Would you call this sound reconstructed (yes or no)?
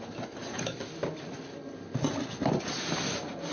no